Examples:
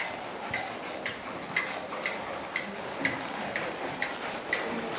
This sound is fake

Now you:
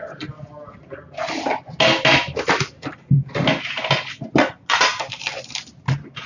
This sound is real